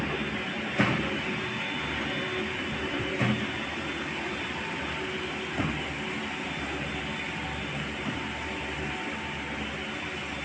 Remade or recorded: recorded